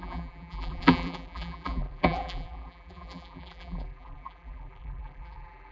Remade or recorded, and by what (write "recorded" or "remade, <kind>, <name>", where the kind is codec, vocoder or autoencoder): remade, vocoder, BigVGAN v2